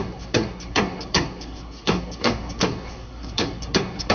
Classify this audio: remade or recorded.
remade